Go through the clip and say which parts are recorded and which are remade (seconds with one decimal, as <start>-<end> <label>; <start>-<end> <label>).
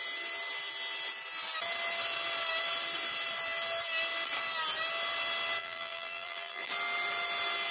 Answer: 0.0-5.6 recorded; 5.6-6.7 remade; 6.7-7.7 recorded